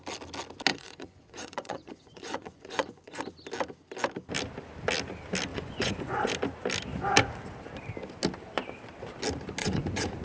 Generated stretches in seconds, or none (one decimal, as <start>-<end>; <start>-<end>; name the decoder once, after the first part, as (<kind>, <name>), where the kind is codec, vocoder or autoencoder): 0.7-3.2 (vocoder, Vocos); 5.5-6.3; 9.6-10.2